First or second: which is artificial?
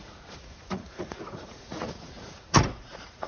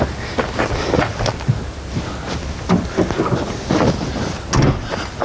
first